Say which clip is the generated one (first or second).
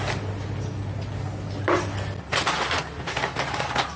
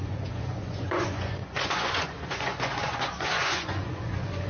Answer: second